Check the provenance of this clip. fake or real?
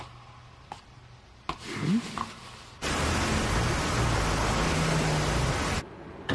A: real